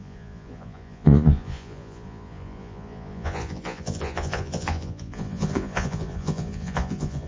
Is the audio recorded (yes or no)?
no